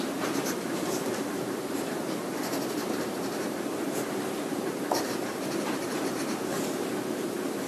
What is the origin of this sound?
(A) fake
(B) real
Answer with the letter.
A